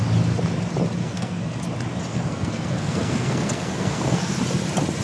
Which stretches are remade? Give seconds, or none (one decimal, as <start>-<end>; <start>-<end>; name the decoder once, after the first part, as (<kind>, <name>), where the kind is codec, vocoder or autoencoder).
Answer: 1.0-1.6 (codec, SNAC); 2.1-4.3